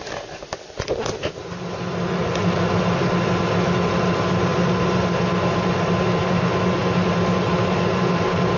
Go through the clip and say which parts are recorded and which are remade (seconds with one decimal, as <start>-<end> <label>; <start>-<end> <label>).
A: 0.0-8.6 recorded